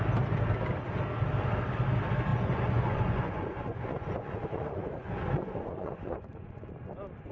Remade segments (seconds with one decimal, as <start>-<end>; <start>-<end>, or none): 2.3-6.7